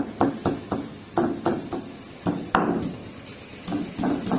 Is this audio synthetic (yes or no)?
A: no